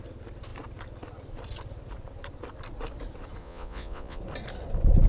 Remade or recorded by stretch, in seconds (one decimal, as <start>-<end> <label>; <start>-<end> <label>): 0.0-3.4 recorded; 3.4-4.2 remade; 4.2-5.1 recorded

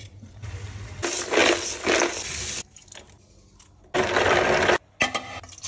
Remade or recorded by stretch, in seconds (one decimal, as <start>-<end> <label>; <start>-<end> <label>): 0.0-5.7 recorded